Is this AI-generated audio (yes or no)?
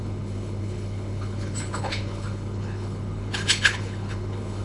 yes